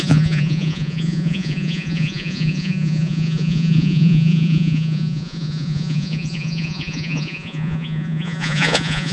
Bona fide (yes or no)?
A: no